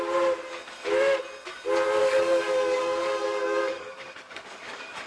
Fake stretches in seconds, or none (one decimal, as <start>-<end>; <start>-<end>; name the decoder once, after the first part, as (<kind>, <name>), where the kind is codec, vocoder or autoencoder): 2.0-5.1 (codec, DAC)